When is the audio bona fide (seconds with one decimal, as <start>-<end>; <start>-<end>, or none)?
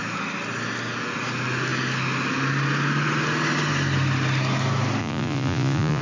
0.0-5.0